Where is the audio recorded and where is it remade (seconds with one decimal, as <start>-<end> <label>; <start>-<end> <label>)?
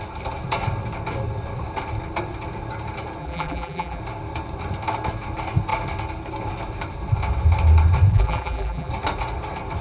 0.0-3.2 recorded; 3.2-4.0 remade; 4.0-8.1 recorded; 8.1-8.9 remade; 8.9-9.8 recorded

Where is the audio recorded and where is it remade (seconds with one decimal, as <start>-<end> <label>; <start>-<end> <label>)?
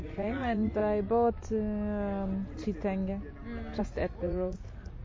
0.0-0.8 remade; 0.8-3.8 recorded; 3.8-5.0 remade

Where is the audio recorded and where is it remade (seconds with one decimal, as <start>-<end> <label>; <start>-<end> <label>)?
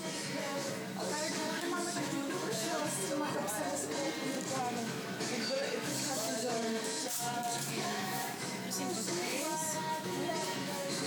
0.0-2.8 remade; 2.8-4.5 recorded; 4.5-11.1 remade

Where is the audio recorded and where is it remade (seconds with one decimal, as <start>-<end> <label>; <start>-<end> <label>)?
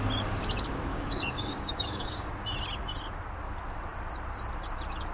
0.0-0.9 recorded; 0.9-2.3 remade; 2.3-5.1 recorded